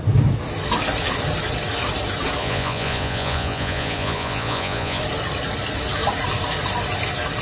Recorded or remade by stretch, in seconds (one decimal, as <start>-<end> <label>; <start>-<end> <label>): 0.0-2.4 recorded; 2.4-5.0 remade; 5.0-7.4 recorded